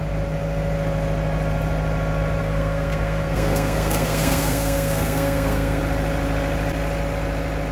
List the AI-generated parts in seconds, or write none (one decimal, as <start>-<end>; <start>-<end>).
2.4-5.8